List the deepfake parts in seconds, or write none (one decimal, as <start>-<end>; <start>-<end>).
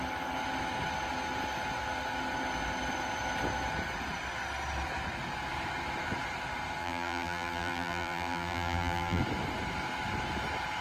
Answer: 6.8-9.2